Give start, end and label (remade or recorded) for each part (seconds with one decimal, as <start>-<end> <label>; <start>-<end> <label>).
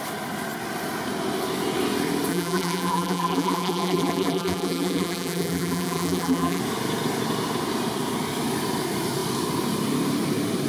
0.0-2.3 recorded; 2.3-6.6 remade; 6.6-10.7 recorded